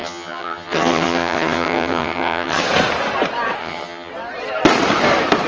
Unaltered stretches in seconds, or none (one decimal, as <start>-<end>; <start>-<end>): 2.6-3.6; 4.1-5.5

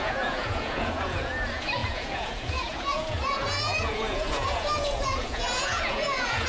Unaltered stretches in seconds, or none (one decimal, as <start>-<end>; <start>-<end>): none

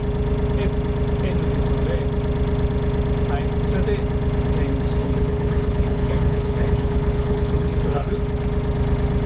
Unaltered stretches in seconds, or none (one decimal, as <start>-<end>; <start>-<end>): 0.0-5.0; 8.2-9.3

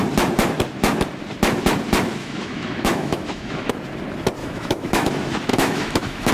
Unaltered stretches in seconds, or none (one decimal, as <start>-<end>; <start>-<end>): 0.0-2.2; 3.7-4.4; 5.1-5.5

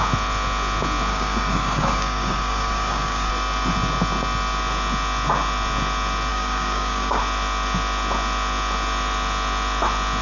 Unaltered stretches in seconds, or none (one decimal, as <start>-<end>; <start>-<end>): 0.0-1.1; 3.3-6.3; 7.2-10.2

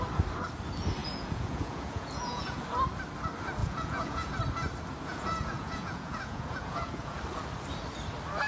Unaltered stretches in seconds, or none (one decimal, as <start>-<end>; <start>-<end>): 0.0-1.0; 2.6-3.6; 4.4-5.1; 7.2-8.5

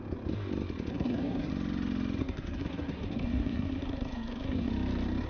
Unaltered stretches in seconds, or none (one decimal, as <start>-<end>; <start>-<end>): 0.0-0.9; 1.5-2.2; 4.7-5.3